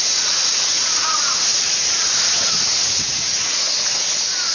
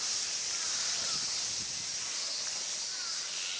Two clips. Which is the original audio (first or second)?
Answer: second